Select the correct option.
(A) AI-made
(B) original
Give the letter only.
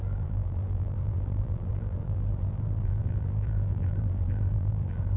A